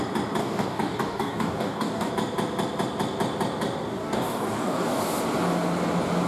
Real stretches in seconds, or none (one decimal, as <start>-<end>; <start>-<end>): 0.0-0.4; 2.1-4.0; 5.0-6.3